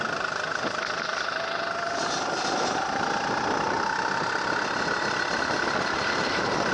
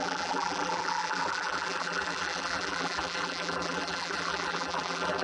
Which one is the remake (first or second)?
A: second